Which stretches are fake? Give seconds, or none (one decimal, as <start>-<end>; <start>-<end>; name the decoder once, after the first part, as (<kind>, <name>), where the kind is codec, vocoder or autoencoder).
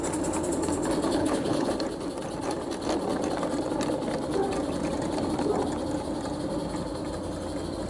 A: 1.2-1.7 (codec, HILCodec)